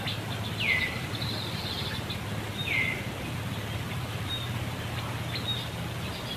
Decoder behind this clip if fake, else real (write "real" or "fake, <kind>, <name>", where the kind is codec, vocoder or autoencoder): fake, vocoder, BigVGAN v2